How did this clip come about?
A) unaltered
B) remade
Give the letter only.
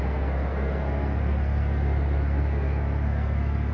B